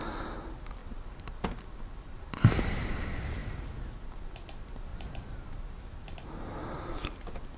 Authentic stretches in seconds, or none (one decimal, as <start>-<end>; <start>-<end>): 0.0-4.9; 6.3-7.6